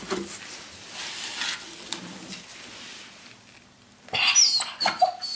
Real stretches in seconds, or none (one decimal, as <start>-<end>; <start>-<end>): 0.0-5.4